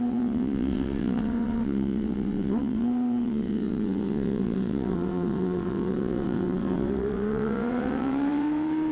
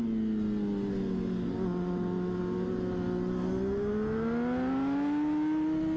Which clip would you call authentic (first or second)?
second